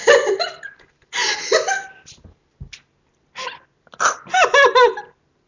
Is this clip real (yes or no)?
yes